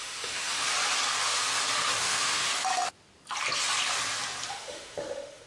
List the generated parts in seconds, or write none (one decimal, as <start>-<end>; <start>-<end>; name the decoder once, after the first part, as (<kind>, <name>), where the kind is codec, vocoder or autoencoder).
0.0-0.7 (autoencoder, DAC-VAE); 2.0-2.5; 4.5-5.5